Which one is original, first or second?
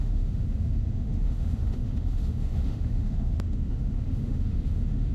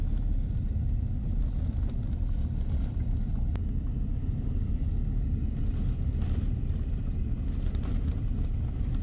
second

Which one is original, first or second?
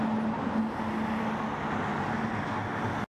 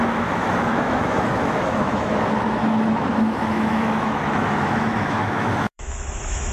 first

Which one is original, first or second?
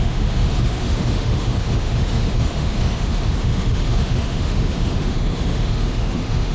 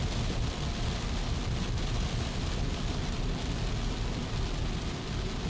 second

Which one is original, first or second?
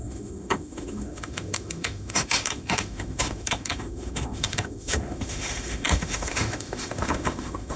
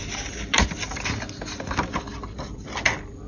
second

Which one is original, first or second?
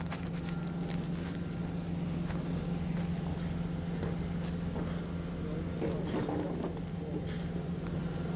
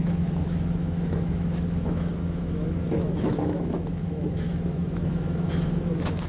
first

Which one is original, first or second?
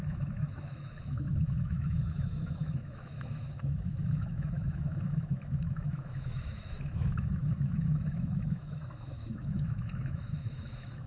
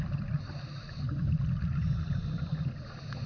second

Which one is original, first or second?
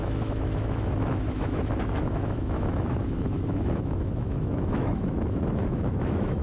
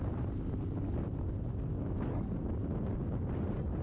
second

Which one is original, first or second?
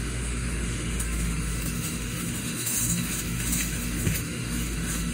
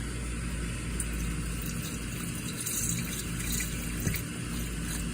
second